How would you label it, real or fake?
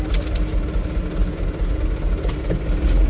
real